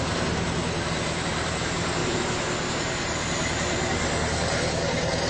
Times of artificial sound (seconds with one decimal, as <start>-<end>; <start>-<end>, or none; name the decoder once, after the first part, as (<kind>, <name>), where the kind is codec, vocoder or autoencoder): 0.0-2.0 (vocoder, BigVGAN v2)